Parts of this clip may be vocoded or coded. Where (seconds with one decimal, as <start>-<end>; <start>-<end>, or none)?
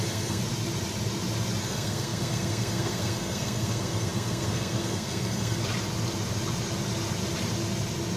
0.0-0.4; 1.6-5.6